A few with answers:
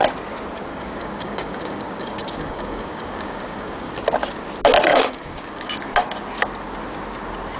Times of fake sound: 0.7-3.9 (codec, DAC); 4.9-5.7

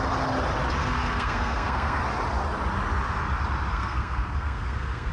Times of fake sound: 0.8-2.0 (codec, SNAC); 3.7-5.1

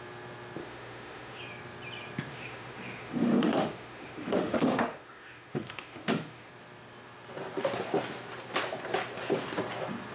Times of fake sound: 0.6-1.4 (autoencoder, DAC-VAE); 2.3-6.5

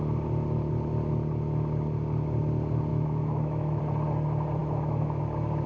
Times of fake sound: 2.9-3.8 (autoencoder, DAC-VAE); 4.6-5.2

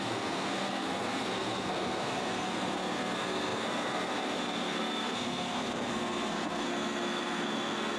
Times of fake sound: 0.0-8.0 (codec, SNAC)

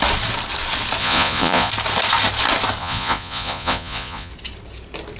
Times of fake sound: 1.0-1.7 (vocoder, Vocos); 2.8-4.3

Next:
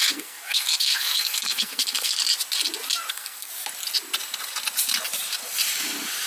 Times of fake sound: 0.0-2.2 (codec, SNAC); 3.1-3.5

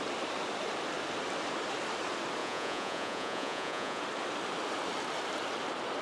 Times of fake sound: 2.4-4.0 (vocoder, Vocos)